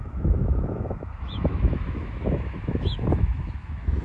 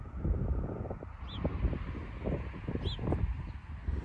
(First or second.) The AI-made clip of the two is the first